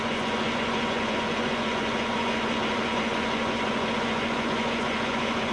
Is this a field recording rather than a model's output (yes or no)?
no